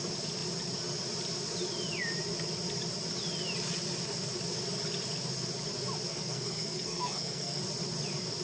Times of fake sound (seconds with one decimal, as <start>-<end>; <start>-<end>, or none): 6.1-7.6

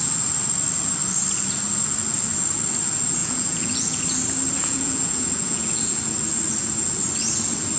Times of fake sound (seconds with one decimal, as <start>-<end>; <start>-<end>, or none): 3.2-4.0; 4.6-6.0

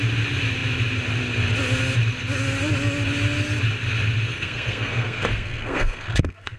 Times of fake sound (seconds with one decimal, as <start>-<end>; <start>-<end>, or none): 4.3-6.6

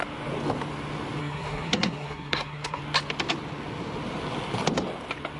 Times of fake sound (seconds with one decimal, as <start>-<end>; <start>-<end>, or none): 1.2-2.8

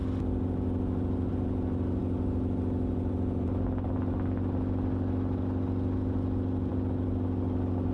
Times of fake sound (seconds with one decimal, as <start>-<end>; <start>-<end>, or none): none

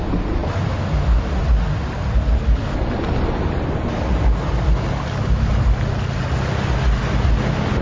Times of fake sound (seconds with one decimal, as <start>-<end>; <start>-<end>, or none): none

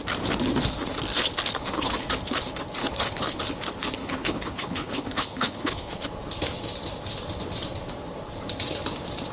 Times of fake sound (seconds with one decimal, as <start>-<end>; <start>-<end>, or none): 1.6-2.1; 2.8-3.4; 4.0-6.0

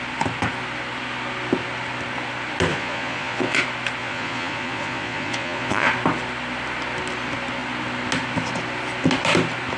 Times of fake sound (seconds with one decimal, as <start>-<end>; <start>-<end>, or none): 2.7-3.6; 4.0-5.9